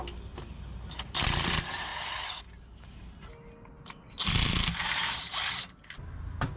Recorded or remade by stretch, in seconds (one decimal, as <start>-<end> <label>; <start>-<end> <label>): 0.0-6.6 recorded

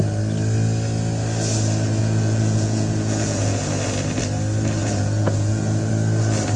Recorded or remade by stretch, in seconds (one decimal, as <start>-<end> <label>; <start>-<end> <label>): 0.0-2.0 recorded; 2.0-3.7 remade; 3.7-4.8 recorded; 4.8-5.9 remade; 5.9-6.6 recorded

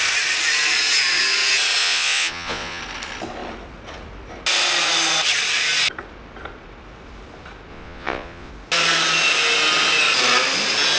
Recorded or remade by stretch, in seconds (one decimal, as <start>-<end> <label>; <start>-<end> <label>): 0.0-1.8 recorded; 1.8-2.8 remade; 2.8-7.7 recorded; 7.7-8.5 remade; 8.5-11.0 recorded